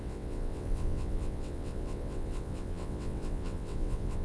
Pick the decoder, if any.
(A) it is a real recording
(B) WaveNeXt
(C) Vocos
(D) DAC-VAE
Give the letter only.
B